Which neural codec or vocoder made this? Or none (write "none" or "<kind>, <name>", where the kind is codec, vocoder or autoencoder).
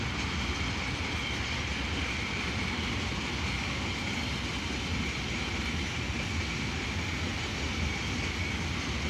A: none